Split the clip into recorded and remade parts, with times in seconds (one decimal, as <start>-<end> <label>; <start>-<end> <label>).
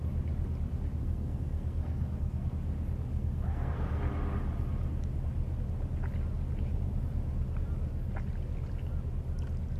0.0-1.0 recorded; 1.0-2.5 remade; 2.5-3.1 recorded; 3.1-4.0 remade; 4.0-9.8 recorded